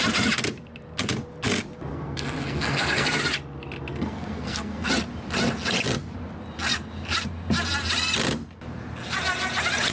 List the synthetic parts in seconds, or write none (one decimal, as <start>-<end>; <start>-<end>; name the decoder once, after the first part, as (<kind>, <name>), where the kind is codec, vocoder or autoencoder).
1.9-3.2 (codec, SNAC); 3.9-4.9